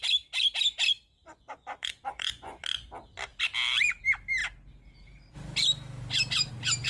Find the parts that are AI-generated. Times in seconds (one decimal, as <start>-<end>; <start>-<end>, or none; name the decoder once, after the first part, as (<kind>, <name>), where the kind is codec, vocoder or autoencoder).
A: 1.2-2.6 (vocoder, Vocos)